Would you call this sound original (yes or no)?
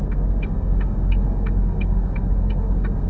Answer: no